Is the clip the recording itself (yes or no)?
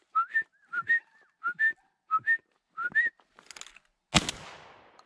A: yes